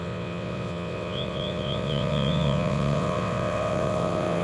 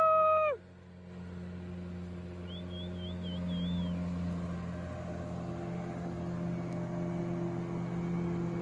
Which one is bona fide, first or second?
second